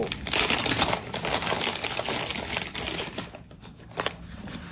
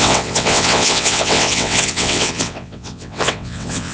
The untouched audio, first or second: first